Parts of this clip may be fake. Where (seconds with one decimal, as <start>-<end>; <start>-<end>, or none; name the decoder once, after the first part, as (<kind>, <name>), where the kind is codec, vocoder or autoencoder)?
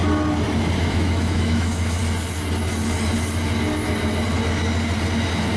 0.8-2.0 (autoencoder, DAC-VAE)